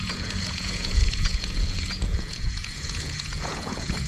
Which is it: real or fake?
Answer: fake